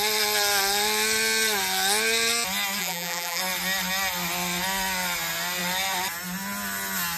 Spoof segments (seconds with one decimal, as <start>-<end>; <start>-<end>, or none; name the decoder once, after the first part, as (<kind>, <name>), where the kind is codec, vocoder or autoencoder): 2.8-3.4 (vocoder, BigVGAN v2)